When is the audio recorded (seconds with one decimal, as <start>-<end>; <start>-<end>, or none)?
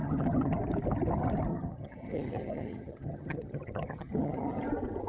0.6-1.5; 4.6-5.1